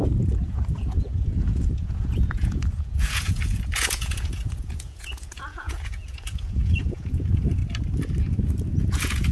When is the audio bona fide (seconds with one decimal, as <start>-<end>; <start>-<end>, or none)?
7.6-8.8